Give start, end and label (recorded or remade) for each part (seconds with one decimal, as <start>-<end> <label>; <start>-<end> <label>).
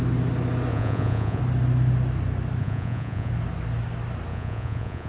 0.0-0.7 recorded; 0.7-1.4 remade; 1.4-2.6 recorded; 2.6-3.3 remade; 3.3-4.3 recorded; 4.3-5.1 remade